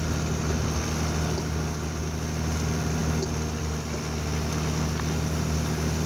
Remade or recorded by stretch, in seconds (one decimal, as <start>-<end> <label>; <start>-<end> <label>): 0.0-6.1 recorded